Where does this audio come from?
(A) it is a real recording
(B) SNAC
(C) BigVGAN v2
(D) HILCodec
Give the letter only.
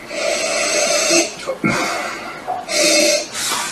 A